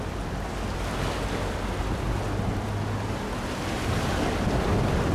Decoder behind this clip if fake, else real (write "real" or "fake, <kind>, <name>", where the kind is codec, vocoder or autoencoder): real